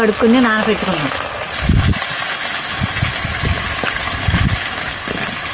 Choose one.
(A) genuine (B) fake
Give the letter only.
A